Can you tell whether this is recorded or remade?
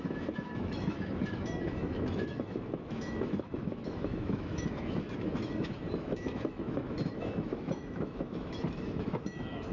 remade